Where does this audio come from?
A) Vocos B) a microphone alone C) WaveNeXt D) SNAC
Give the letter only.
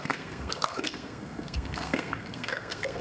D